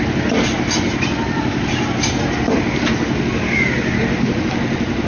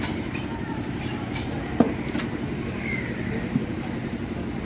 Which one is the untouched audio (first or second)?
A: first